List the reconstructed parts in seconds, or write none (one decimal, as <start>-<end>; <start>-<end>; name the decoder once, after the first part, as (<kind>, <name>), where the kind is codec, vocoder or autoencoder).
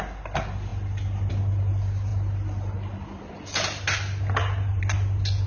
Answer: none